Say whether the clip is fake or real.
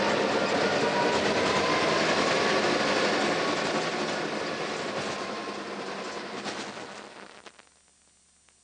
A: real